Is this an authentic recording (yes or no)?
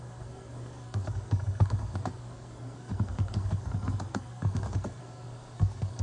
no